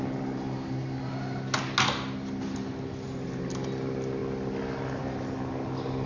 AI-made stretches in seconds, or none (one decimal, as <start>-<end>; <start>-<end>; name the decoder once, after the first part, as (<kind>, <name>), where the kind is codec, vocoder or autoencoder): none